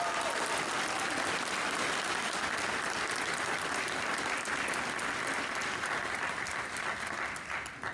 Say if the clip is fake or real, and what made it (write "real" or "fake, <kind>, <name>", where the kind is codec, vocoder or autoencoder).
real